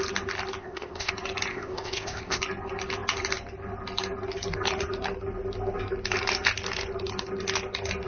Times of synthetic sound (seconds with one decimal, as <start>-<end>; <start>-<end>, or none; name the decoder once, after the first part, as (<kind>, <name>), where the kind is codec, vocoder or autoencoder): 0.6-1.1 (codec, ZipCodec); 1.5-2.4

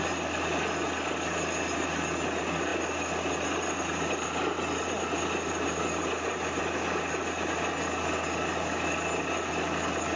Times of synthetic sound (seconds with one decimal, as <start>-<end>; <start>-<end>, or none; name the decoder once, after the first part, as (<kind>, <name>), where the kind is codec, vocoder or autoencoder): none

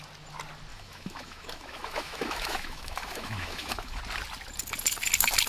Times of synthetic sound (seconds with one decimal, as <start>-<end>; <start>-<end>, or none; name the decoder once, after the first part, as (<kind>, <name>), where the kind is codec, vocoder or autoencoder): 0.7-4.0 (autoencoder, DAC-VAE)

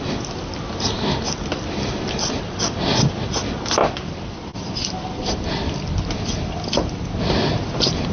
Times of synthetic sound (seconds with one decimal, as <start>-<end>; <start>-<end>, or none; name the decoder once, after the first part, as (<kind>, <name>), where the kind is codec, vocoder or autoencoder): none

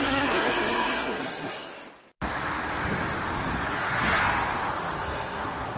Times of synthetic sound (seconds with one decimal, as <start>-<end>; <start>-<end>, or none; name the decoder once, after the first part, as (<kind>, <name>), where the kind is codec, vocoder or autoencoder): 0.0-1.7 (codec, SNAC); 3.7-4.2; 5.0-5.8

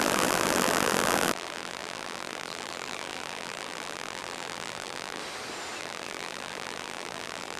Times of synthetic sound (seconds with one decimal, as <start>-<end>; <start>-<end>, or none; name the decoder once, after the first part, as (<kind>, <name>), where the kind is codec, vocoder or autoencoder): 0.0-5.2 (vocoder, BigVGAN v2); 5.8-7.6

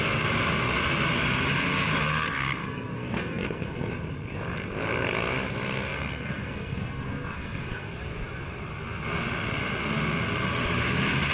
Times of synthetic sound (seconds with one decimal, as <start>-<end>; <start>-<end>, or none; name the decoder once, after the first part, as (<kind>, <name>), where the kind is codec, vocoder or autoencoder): 2.6-3.9 (codec, SNAC); 5.9-8.0